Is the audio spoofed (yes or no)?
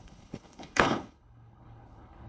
yes